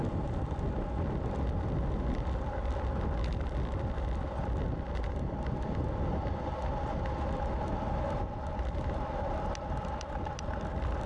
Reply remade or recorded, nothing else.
recorded